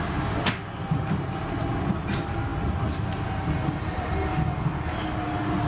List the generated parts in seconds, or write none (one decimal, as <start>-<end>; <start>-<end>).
none

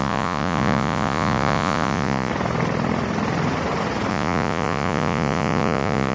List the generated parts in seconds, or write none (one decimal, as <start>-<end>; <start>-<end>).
0.0-2.3; 4.1-6.1

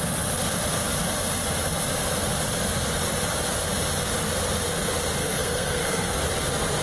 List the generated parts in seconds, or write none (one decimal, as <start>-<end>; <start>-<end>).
5.2-6.2